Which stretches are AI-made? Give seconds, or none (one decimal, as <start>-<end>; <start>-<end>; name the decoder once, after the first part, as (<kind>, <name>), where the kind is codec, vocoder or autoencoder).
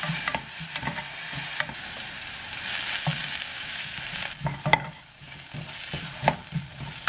3.5-4.0 (autoencoder, DAC-VAE)